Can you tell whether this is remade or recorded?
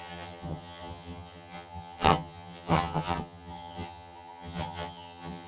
remade